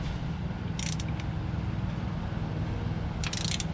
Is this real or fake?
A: real